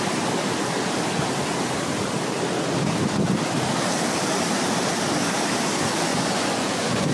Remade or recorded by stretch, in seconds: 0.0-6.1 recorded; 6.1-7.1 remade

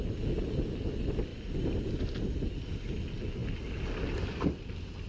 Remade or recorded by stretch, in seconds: 0.0-5.1 recorded

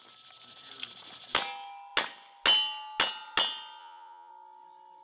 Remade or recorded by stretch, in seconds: 0.0-3.8 recorded; 3.8-4.3 remade; 4.3-5.0 recorded